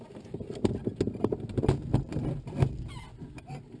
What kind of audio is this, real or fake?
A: real